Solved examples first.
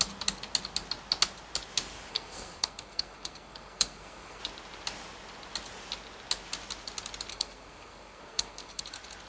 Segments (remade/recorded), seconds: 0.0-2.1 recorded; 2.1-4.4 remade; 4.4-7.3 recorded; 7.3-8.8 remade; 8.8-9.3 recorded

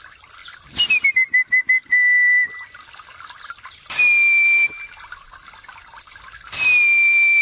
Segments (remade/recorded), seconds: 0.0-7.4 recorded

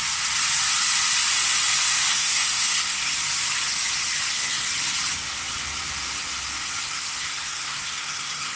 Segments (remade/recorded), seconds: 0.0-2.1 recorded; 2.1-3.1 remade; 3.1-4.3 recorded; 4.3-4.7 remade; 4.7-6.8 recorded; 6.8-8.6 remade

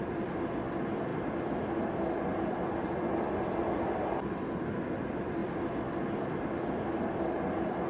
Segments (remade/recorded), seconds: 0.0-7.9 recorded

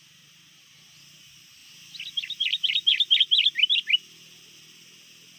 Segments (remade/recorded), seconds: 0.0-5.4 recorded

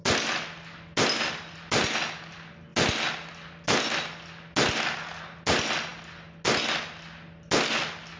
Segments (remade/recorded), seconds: 0.0-8.2 recorded